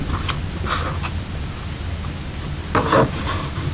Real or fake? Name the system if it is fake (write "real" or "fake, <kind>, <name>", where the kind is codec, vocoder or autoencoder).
real